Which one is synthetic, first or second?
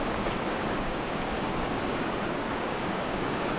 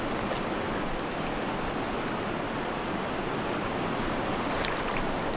first